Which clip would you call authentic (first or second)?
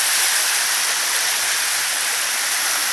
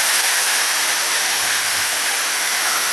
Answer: first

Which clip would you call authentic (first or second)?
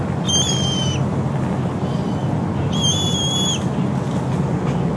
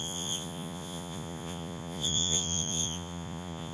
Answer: first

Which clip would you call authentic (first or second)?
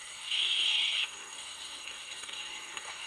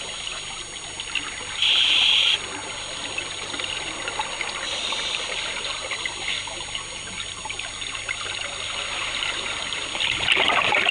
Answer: second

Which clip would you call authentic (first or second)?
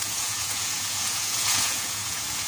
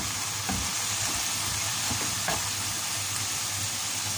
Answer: second